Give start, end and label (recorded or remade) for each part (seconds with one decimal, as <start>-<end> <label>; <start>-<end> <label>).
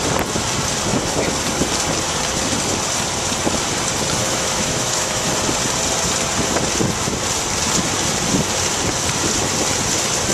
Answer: 0.0-4.2 recorded; 4.2-5.3 remade; 5.3-10.3 recorded